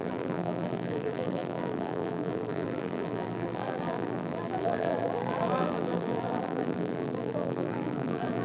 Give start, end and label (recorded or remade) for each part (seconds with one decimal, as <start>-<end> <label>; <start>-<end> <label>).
0.0-8.4 remade